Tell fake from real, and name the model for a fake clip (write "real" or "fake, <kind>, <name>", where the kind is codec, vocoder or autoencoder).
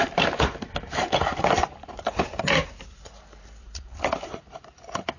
fake, vocoder, BigVGAN v2